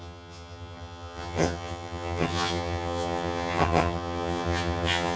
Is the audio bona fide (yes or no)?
no